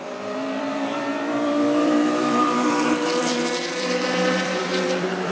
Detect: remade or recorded remade